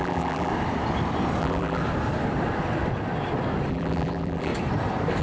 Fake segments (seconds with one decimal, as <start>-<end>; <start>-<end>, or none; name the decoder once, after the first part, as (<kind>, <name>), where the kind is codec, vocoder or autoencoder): 0.0-0.5 (vocoder, BigVGAN v2); 1.4-1.8; 3.7-4.5